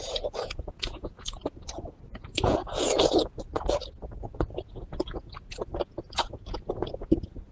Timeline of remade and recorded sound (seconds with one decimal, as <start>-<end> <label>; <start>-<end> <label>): 0.0-3.5 remade; 3.5-4.3 recorded; 4.3-7.5 remade